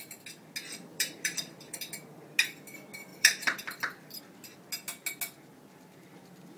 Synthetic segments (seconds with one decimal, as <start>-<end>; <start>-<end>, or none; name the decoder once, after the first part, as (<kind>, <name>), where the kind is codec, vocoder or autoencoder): 0.9-2.2 (vocoder, BigVGAN v2); 3.1-4.2

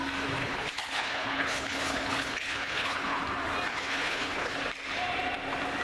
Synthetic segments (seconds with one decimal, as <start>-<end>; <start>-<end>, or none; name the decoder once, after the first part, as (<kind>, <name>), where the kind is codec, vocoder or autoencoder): 0.4-3.2 (codec, HILCodec); 3.7-4.5